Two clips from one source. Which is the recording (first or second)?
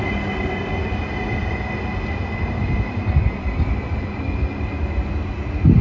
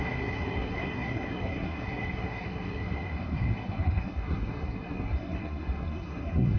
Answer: first